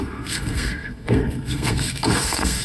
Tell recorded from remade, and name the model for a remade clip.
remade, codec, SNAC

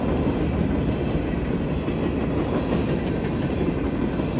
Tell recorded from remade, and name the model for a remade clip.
recorded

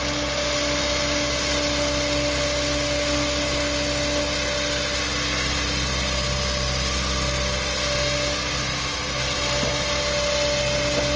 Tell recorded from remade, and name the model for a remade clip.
recorded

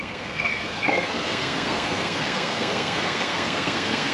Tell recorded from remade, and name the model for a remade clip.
remade, codec, SNAC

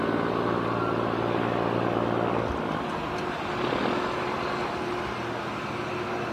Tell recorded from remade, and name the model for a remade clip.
recorded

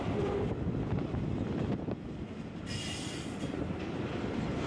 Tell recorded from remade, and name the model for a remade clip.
recorded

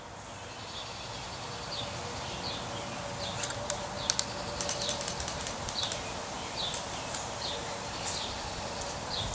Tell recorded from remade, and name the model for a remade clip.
recorded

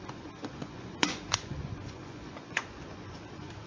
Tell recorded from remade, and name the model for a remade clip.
remade, vocoder, Vocos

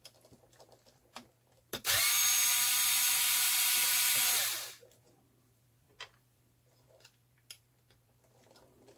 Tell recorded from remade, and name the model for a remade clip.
remade, vocoder, BigVGAN v2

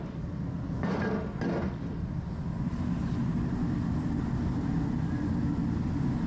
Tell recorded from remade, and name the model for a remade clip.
recorded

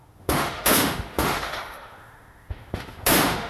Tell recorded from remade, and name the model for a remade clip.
remade, autoencoder, DAC-VAE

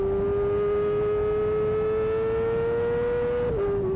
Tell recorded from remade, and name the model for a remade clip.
recorded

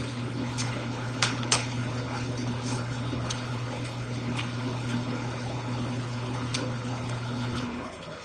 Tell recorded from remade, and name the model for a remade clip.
remade, codec, HILCodec